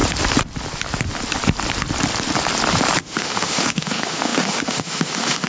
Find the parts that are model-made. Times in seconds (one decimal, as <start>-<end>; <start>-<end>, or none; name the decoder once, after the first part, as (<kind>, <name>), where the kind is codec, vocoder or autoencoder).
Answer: 3.0-5.5 (autoencoder, DAC-VAE)